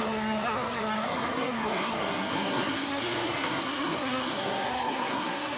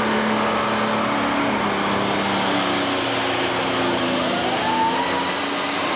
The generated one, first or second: first